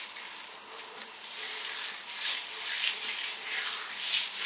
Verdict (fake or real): real